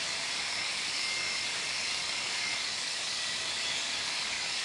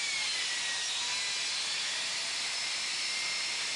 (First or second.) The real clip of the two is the second